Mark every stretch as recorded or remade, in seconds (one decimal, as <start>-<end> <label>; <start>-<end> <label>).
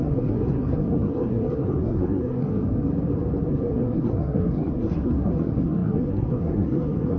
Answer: 0.0-2.9 remade; 2.9-3.5 recorded; 3.5-7.2 remade